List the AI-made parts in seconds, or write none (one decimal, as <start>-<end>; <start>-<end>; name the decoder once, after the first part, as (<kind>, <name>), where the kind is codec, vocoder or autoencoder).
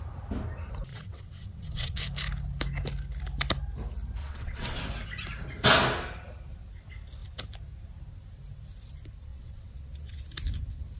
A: 0.9-2.0 (vocoder, WaveNeXt); 4.2-4.8; 9.3-10.2